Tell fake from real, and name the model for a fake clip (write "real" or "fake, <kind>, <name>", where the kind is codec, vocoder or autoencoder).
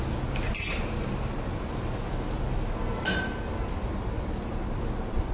real